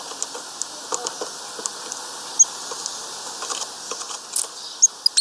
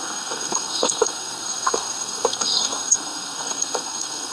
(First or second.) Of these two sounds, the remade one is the second